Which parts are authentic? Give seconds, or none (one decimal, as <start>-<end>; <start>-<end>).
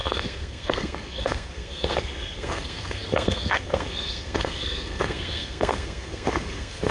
none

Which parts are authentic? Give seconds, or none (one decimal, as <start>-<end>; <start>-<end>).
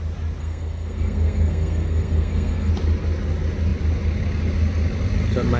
0.0-0.4; 2.7-5.6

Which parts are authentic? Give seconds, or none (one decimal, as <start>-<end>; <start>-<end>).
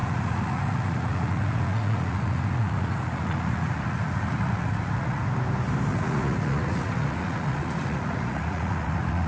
5.2-5.9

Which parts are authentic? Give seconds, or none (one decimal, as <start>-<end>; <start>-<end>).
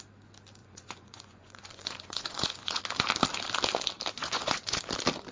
0.0-0.6; 2.8-4.2; 4.8-5.3